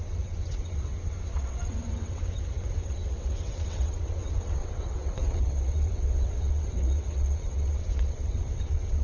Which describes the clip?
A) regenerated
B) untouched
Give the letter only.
A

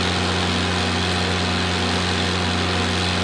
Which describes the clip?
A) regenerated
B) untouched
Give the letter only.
B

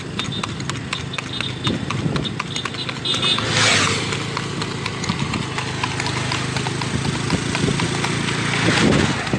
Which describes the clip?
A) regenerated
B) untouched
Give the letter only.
B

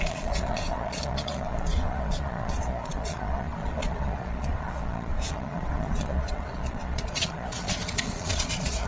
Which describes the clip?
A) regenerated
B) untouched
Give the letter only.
A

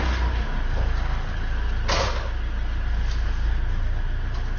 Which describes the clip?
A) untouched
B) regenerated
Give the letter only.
A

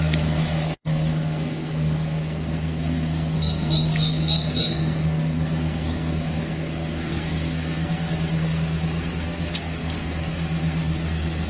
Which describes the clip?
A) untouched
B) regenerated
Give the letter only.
B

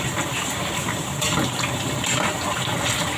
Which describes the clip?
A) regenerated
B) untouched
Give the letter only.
A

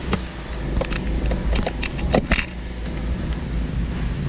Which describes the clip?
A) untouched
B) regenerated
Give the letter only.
A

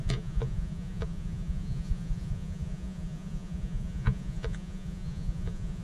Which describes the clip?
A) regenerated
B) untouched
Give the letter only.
A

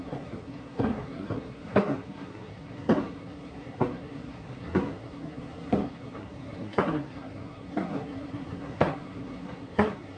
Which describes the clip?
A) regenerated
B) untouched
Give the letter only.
A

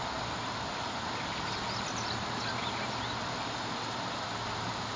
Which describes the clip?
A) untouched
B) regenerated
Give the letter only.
A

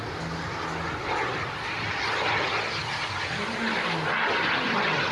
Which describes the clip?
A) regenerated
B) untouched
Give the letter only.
B